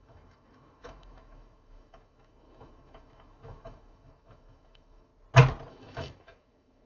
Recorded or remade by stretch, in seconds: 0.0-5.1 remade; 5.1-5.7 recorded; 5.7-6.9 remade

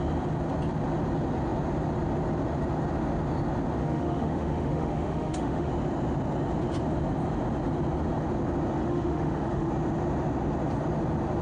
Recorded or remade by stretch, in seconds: 0.0-3.8 recorded; 3.8-5.7 remade; 5.7-8.8 recorded; 8.8-9.7 remade; 9.7-11.4 recorded

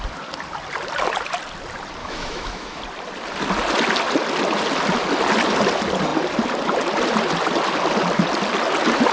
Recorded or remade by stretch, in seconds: 0.0-2.0 recorded; 2.0-2.8 remade; 2.8-9.1 recorded

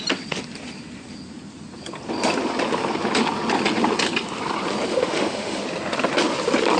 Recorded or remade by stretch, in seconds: 0.0-4.9 recorded; 4.9-5.6 remade; 5.6-6.8 recorded